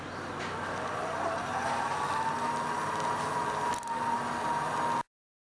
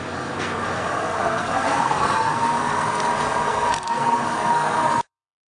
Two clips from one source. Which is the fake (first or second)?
second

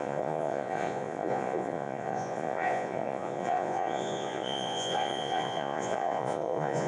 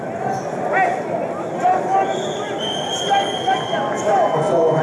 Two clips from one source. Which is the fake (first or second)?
first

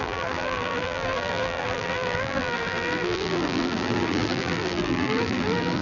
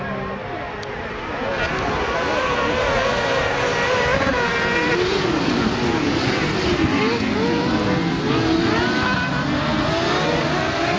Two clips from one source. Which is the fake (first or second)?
first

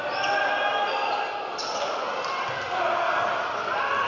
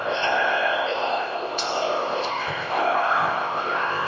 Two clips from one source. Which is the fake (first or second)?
second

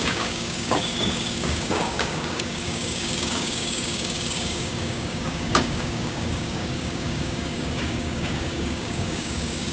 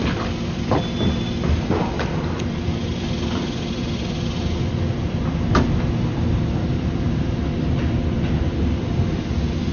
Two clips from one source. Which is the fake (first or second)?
first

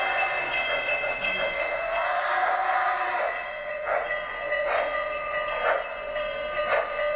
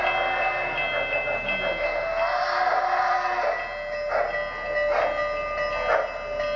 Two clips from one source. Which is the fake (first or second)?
first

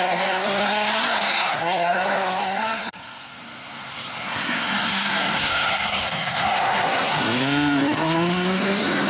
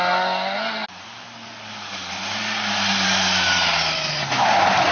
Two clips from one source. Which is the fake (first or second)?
first